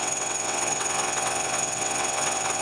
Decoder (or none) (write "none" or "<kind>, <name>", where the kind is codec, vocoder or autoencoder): vocoder, WaveNeXt